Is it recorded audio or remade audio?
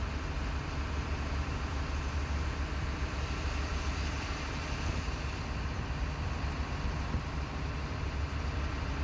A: recorded